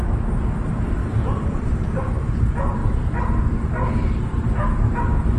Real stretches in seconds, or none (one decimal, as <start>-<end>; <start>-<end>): 0.0-1.0; 2.1-2.8; 3.9-5.4